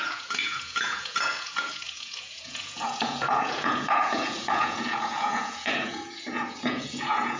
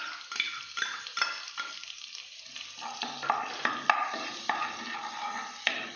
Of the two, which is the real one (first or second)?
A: second